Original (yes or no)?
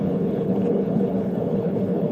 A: no